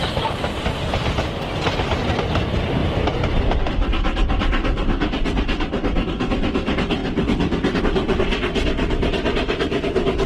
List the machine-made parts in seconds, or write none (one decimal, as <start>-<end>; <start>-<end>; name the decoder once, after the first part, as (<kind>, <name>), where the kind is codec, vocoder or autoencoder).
none